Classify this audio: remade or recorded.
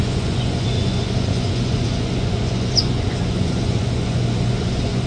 remade